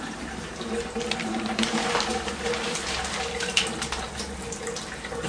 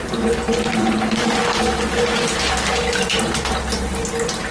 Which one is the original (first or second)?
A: second